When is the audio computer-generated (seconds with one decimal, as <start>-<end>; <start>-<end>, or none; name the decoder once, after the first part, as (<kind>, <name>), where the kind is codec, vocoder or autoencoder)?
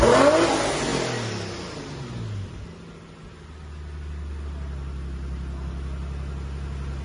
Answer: none